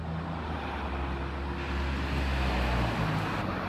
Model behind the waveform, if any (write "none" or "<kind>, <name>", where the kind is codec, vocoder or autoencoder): none